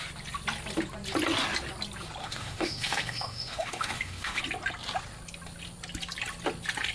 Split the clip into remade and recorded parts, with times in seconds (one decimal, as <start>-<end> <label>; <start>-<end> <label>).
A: 0.0-2.2 recorded; 2.2-4.4 remade; 4.4-6.9 recorded